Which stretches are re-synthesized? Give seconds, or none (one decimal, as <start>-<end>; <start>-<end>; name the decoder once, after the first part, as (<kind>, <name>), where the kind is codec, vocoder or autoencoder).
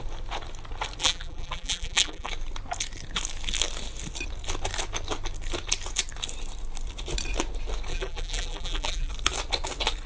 1.0-2.3 (vocoder, BigVGAN v2); 7.9-9.1